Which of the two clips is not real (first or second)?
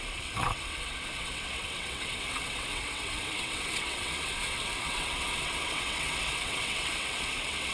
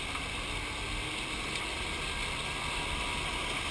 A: first